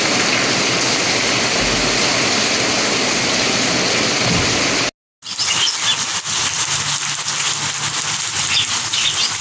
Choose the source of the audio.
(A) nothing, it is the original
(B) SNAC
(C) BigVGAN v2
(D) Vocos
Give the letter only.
A